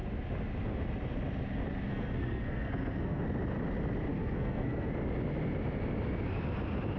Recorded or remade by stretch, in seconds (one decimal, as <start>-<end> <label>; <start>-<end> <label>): 0.0-1.9 recorded; 1.9-3.2 remade; 3.2-4.1 recorded; 4.1-4.9 remade; 4.9-7.0 recorded